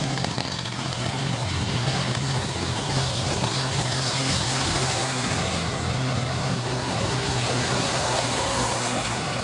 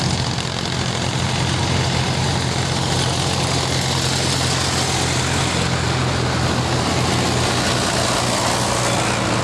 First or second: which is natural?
second